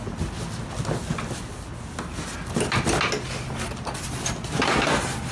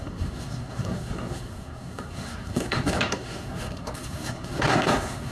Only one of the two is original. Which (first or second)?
first